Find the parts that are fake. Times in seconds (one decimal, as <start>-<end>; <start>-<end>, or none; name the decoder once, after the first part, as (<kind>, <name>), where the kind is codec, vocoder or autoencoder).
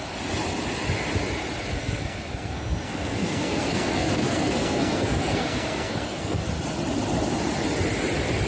1.7-6.4 (codec, SNAC)